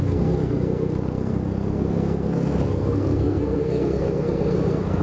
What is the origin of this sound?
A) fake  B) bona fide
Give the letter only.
A